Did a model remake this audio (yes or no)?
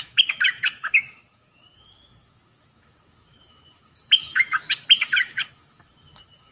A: yes